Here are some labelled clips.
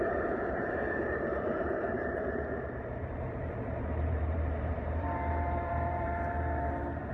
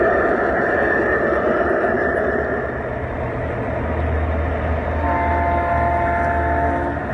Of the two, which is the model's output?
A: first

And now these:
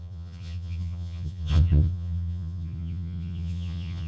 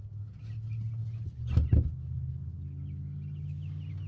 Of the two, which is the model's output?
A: first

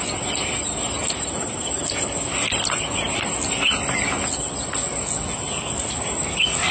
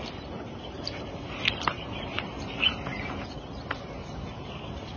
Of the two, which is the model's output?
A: second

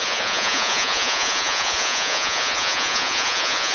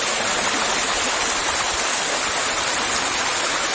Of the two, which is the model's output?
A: first